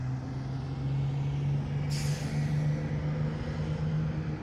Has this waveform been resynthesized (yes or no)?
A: no